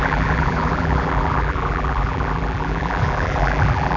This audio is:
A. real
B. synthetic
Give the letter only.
B